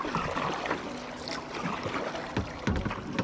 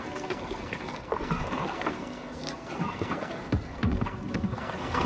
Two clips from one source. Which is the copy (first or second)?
second